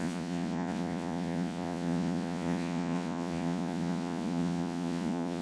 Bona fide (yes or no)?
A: no